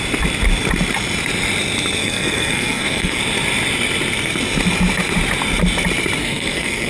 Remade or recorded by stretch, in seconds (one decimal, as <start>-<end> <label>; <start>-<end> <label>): 0.0-2.0 recorded; 2.0-3.2 remade; 3.2-6.2 recorded; 6.2-6.9 remade